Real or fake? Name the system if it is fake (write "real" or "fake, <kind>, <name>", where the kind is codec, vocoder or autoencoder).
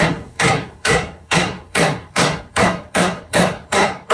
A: fake, codec, SNAC